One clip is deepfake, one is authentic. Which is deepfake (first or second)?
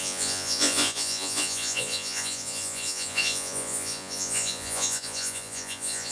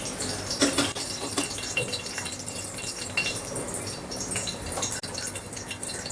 first